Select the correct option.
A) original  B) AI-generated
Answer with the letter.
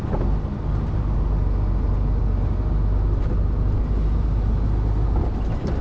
A